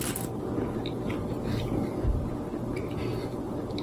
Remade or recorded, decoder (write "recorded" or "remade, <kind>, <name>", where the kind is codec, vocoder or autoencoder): recorded